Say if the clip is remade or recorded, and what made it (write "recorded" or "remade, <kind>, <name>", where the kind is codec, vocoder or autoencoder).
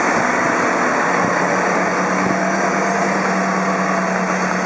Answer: recorded